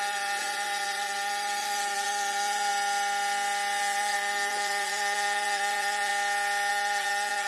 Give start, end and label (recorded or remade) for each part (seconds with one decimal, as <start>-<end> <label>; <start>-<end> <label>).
0.0-2.7 remade; 2.7-3.8 recorded; 3.8-6.1 remade; 6.1-6.7 recorded; 6.7-7.5 remade